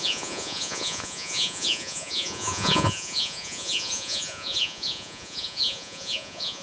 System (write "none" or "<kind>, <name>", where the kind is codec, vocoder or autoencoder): vocoder, Vocos